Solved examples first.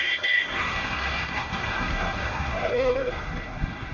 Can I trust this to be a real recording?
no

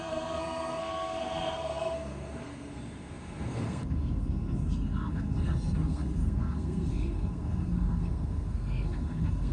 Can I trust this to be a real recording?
no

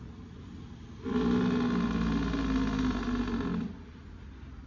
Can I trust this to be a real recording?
yes